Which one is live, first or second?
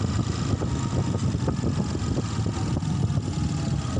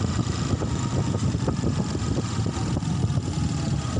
first